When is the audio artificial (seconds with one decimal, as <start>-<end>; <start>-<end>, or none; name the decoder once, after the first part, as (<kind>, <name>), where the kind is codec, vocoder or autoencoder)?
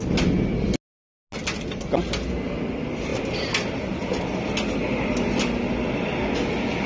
none